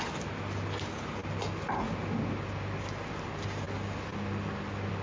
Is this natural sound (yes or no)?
yes